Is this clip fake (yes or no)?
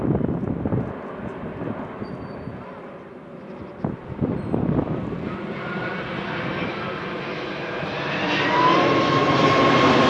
no